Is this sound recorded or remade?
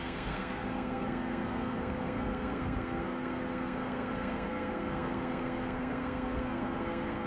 remade